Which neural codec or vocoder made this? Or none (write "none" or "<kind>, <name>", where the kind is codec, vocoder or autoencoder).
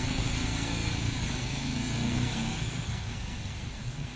codec, SNAC